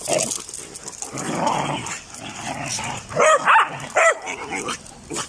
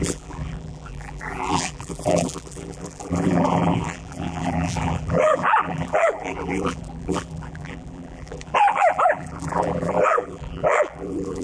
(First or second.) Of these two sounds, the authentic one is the first